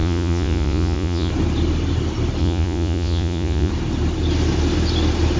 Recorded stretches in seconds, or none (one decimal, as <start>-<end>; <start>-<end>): 1.3-2.4; 3.7-5.4